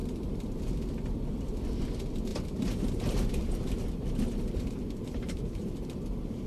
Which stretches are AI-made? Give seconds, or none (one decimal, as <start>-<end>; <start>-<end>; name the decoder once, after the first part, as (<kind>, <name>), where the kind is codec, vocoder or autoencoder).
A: 0.0-0.6 (vocoder, BigVGAN v2); 2.3-6.5